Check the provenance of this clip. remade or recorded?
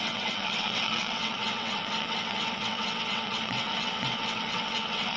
remade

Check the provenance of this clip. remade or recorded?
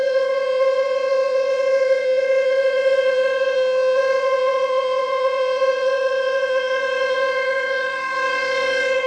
remade